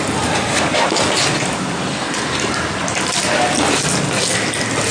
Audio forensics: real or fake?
real